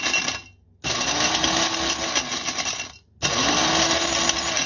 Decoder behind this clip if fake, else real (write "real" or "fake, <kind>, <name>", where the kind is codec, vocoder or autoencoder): real